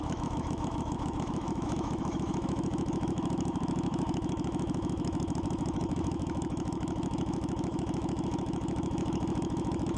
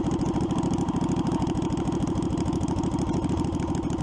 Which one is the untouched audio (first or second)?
second